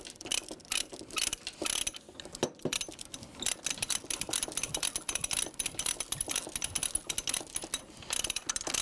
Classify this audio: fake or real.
real